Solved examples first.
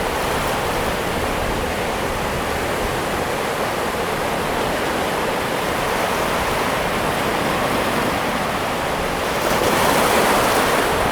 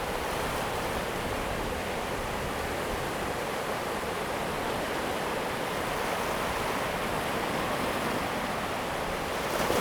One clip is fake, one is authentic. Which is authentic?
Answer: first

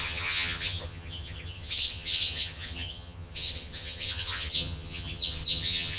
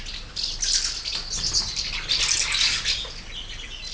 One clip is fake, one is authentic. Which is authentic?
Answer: second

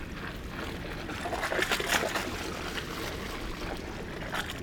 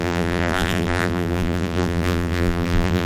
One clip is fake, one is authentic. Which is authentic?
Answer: first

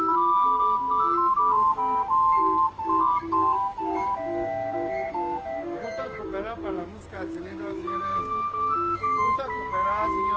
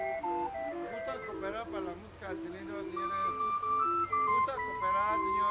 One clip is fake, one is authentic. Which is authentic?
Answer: second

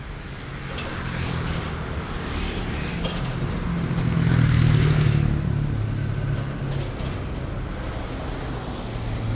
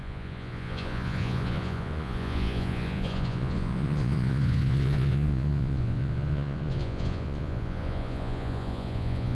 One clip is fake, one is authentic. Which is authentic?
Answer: first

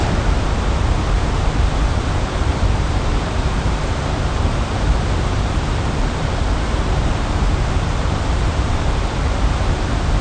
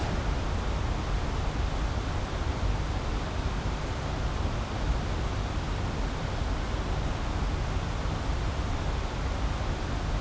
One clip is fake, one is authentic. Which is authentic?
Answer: second